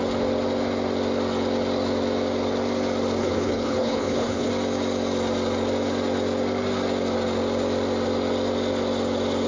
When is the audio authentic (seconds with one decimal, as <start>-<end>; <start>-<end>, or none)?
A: 0.0-3.2; 4.5-9.5